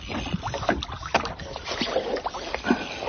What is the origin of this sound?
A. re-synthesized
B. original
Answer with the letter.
B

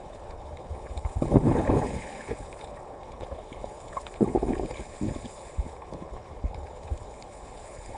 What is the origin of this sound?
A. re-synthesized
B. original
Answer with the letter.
A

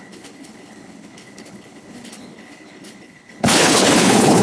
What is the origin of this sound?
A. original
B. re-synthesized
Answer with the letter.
B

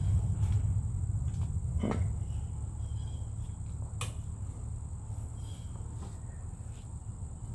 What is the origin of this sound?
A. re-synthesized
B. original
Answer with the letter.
B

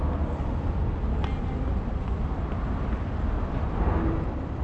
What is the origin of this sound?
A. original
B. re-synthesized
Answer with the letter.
A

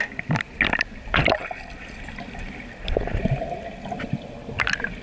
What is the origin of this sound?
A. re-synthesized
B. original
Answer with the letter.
B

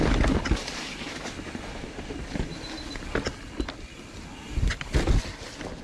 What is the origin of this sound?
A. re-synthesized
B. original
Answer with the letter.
B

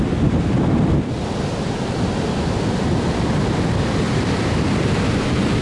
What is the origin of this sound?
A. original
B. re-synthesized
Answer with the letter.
A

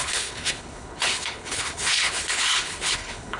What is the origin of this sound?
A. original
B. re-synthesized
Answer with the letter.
B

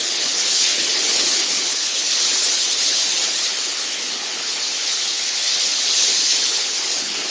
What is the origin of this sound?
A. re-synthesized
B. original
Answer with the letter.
A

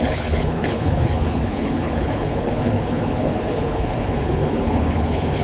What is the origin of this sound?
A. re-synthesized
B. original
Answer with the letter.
A